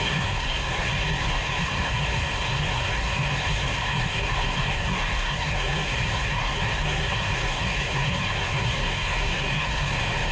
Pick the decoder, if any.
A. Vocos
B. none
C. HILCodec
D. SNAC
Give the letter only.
D